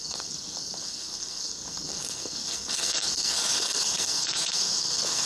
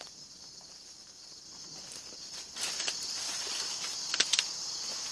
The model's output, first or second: first